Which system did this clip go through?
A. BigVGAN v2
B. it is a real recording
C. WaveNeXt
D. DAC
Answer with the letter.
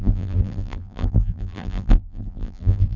A